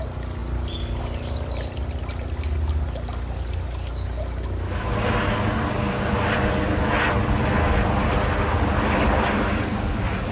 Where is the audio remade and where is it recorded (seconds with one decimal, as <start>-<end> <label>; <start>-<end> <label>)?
0.0-0.4 recorded; 0.4-1.0 remade; 1.0-10.3 recorded

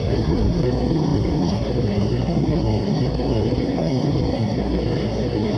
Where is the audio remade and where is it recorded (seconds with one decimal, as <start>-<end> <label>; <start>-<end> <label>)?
0.0-5.6 remade

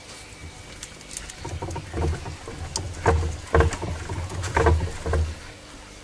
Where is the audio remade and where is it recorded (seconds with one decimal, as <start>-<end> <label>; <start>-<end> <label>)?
0.0-6.0 recorded

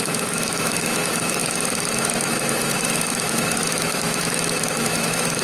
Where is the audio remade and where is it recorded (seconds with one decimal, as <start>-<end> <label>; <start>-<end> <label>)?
0.0-5.4 remade

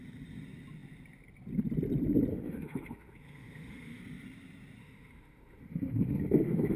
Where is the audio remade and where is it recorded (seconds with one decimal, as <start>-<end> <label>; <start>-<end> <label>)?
0.0-2.3 recorded; 2.3-4.0 remade; 4.0-4.8 recorded; 4.8-6.8 remade

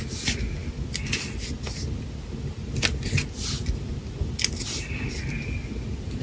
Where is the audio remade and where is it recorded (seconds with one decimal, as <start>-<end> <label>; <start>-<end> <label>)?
0.0-6.2 recorded

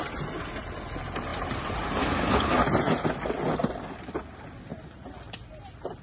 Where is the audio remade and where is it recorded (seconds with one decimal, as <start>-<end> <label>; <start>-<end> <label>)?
0.0-1.3 recorded; 1.3-2.0 remade; 2.0-3.6 recorded; 3.6-4.2 remade; 4.2-6.0 recorded